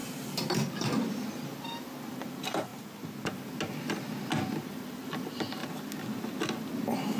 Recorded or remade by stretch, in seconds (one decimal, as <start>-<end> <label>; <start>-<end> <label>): 0.0-2.1 recorded; 2.1-2.7 remade; 2.7-4.8 recorded; 4.8-5.6 remade; 5.6-7.2 recorded